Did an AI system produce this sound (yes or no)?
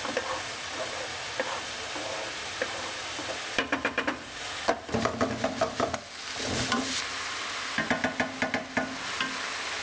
no